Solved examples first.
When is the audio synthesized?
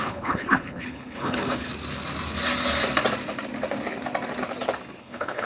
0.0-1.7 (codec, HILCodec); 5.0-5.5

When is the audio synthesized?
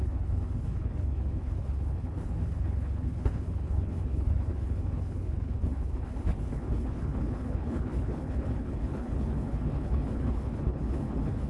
0.0-11.5 (codec, HILCodec)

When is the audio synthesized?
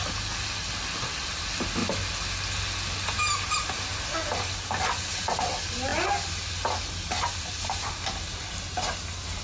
none